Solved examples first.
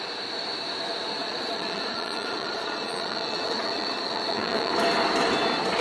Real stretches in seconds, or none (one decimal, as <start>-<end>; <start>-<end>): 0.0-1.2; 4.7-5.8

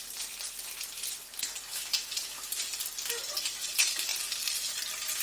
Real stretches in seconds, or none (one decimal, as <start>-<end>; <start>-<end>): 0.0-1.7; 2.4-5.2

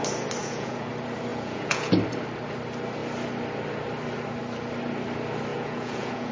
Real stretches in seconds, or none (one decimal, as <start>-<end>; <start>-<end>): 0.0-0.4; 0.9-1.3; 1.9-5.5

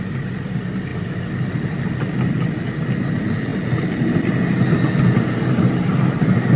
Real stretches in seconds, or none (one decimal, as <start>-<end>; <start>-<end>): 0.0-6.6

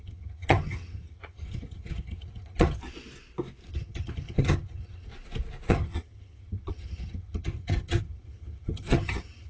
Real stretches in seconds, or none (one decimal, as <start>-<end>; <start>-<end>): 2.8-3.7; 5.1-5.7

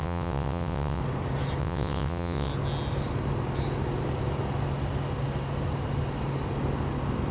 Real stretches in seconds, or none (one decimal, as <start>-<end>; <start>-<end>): 1.0-1.6; 2.5-7.3

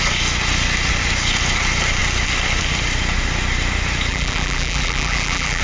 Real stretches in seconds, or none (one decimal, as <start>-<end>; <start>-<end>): 0.0-4.1

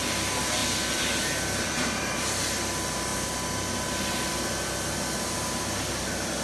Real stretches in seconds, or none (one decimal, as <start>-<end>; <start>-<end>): 0.0-0.6; 2.3-6.4